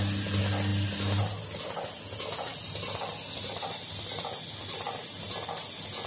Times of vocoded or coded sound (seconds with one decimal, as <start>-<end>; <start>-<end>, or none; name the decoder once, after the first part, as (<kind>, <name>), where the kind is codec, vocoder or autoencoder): none